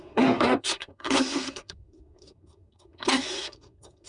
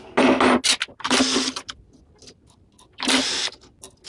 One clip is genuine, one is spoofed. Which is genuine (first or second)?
second